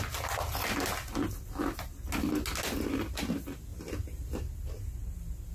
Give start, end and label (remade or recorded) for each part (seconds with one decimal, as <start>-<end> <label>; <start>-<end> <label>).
0.0-5.5 recorded